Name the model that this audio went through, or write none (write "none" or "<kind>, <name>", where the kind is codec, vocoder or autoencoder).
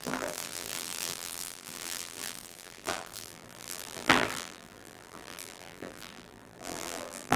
vocoder, BigVGAN v2